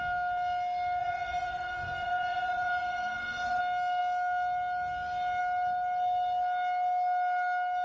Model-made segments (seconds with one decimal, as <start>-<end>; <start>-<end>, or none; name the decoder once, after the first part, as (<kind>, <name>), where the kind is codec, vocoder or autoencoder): 1.0-3.6 (vocoder, Vocos)